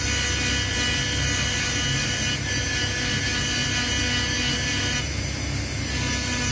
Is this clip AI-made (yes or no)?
no